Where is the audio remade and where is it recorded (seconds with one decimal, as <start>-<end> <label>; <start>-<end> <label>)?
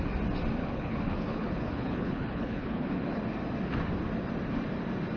0.0-0.6 recorded; 0.6-3.2 remade; 3.2-5.2 recorded